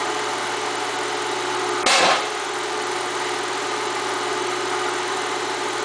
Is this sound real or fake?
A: real